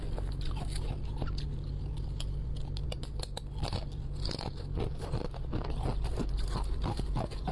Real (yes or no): yes